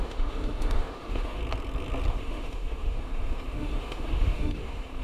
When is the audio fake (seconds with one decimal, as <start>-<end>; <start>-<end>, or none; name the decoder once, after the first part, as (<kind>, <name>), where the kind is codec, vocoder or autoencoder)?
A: 0.0-1.4 (autoencoder, DAC-VAE); 2.1-5.0